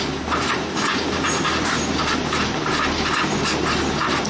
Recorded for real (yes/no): yes